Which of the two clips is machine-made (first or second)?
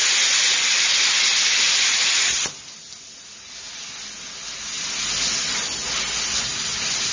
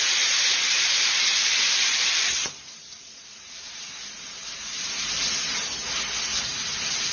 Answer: second